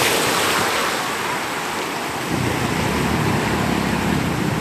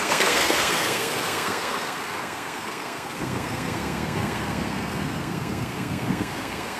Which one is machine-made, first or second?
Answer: second